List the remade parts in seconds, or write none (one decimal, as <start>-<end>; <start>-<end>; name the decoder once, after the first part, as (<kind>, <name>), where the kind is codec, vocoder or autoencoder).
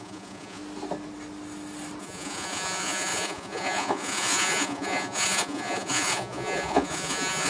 0.0-0.6 (vocoder, Vocos); 2.0-7.5